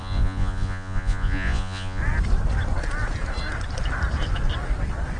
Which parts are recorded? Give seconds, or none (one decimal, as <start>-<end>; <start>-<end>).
2.0-5.2